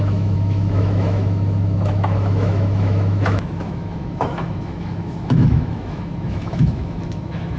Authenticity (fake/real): fake